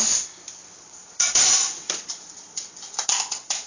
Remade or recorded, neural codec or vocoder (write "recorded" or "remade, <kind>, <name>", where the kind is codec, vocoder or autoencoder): remade, vocoder, BigVGAN v2